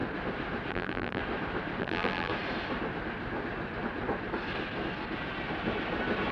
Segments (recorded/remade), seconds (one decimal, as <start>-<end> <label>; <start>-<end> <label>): 0.0-0.7 recorded; 0.7-1.2 remade; 1.2-1.8 recorded; 1.8-2.3 remade; 2.3-6.3 recorded